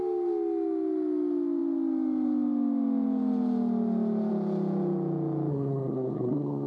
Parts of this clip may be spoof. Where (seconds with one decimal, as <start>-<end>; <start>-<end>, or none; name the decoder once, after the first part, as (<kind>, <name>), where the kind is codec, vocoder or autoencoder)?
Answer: 5.5-6.7 (codec, SNAC)